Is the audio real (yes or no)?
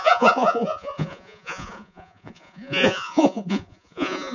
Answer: no